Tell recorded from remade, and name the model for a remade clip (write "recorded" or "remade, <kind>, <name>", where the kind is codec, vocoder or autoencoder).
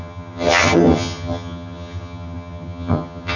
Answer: remade, vocoder, HiFi-GAN